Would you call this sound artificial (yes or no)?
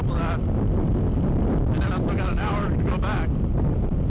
no